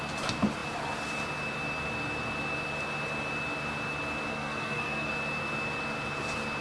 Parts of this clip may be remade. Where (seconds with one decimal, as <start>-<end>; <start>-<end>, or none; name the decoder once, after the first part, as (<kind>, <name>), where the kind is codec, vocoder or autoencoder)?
4.3-5.1 (codec, SNAC)